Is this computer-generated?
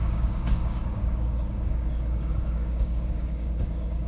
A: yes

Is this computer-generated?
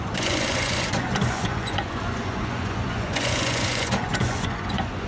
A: yes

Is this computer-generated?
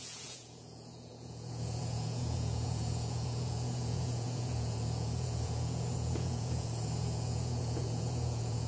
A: yes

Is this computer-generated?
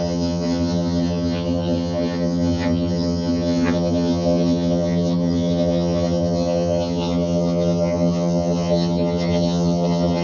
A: yes